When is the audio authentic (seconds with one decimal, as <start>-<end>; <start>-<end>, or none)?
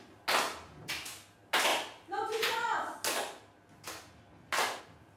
0.0-5.2